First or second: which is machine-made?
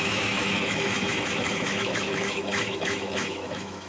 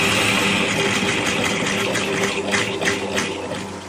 first